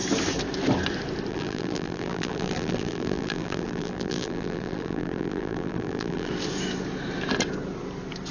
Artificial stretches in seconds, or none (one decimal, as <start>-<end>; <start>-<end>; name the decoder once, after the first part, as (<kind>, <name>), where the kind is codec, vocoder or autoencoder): 1.3-6.3 (vocoder, BigVGAN v2)